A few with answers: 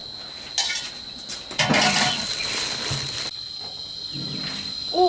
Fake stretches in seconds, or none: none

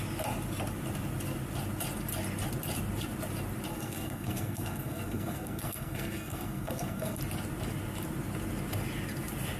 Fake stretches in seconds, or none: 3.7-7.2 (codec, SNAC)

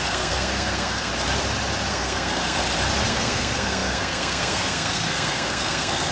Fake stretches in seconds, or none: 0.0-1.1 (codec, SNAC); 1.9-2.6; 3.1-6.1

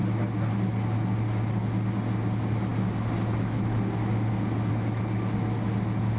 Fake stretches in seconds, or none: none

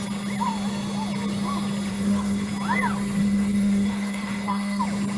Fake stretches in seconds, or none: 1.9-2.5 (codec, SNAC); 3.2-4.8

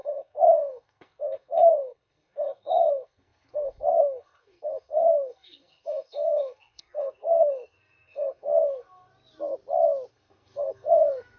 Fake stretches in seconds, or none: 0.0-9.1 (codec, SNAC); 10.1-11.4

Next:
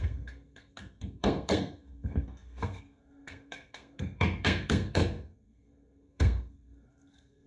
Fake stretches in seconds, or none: 0.0-7.5 (codec, SNAC)